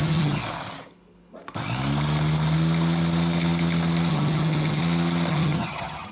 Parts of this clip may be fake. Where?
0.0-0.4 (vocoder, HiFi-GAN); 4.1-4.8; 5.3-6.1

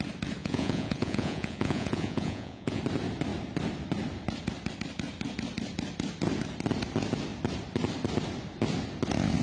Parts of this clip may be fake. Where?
0.4-2.8 (vocoder, Vocos)

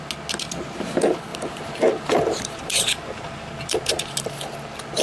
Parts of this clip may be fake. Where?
1.3-4.3 (vocoder, BigVGAN v2)